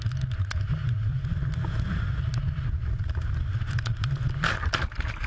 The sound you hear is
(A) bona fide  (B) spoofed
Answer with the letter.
A